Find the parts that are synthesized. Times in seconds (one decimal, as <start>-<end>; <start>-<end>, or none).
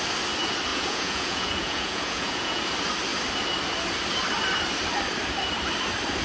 0.7-2.6